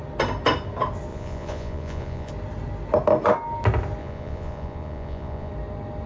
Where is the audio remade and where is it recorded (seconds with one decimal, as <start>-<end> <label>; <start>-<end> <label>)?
0.0-1.1 recorded; 1.1-2.3 remade; 2.3-4.0 recorded; 4.0-5.5 remade; 5.5-6.1 recorded